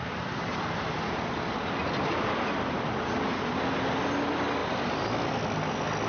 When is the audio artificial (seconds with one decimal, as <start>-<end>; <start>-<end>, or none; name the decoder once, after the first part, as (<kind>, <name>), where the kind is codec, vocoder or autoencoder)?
4.6-5.1 (vocoder, BigVGAN v2)